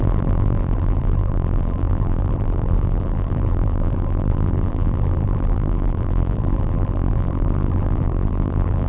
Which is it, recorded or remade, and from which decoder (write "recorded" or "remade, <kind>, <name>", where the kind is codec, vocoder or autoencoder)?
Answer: remade, vocoder, BigVGAN v2